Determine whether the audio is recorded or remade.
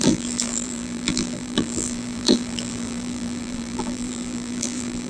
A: remade